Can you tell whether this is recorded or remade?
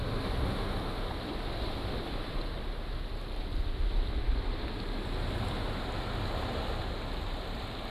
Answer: recorded